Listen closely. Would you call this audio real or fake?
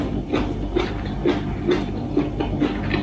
real